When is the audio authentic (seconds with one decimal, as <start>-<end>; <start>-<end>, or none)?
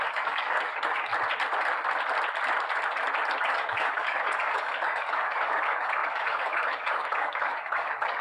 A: 1.1-3.4